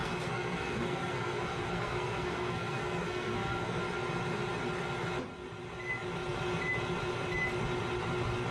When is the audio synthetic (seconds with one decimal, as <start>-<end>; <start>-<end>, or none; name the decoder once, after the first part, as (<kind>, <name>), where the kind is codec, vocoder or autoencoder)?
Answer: 0.0-3.8 (codec, SNAC)